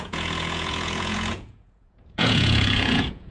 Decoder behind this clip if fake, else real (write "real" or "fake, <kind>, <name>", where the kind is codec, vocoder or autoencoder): fake, vocoder, Vocos